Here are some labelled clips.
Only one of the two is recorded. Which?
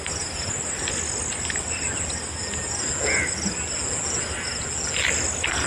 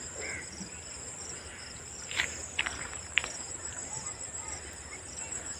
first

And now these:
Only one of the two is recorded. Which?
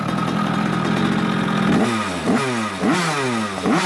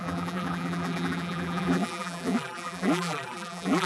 first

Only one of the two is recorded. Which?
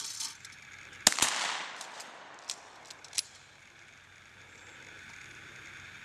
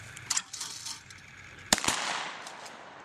first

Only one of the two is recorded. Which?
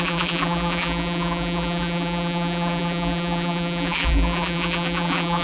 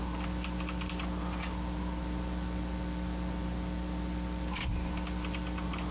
second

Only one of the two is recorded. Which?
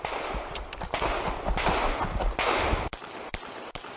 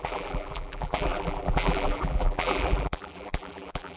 first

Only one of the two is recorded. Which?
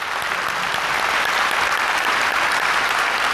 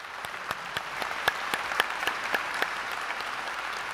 first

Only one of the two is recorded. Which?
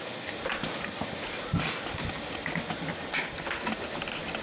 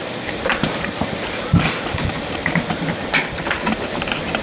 first